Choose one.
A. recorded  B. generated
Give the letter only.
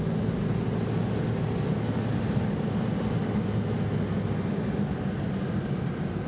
A